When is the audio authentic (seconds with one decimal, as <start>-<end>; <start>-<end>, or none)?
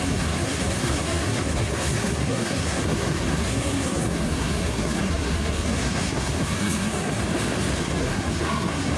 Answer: 7.2-7.8